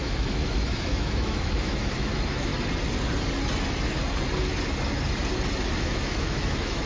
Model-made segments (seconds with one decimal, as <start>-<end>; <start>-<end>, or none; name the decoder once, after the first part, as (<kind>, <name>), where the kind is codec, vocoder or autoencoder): 0.0-2.5 (autoencoder, DAC-VAE); 5.8-6.9